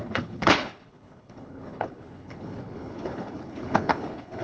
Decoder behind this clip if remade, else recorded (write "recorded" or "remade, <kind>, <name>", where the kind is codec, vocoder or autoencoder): remade, codec, HILCodec